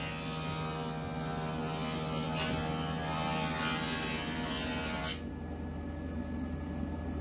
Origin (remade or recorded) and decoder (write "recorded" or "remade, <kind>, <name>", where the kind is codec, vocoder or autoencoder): recorded